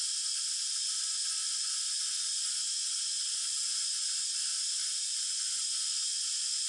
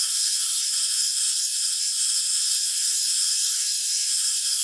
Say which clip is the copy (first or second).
second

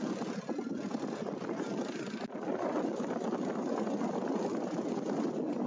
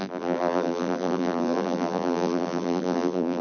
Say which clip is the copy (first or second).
second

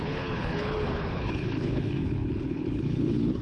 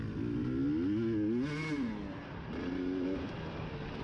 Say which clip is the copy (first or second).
first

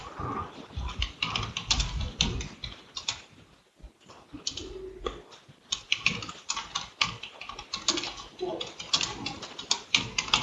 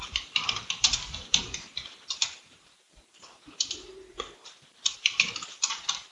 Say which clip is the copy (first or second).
second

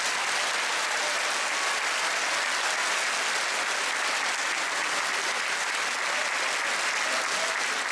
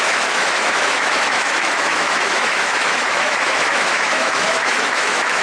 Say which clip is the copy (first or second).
second